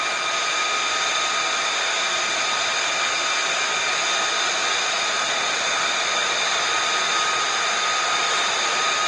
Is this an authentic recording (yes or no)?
yes